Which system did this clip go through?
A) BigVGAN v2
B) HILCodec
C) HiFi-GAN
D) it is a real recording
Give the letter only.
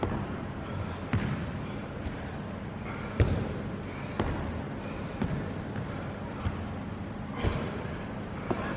D